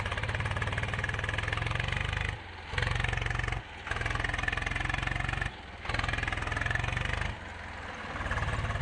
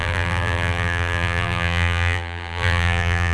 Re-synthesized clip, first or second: second